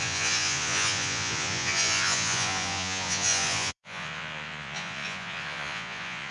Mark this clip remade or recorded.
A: remade